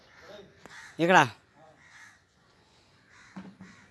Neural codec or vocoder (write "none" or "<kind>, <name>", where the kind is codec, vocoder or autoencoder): vocoder, Vocos